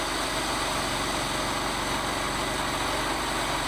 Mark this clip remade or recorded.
recorded